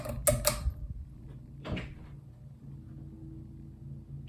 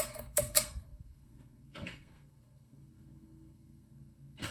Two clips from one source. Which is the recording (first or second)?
first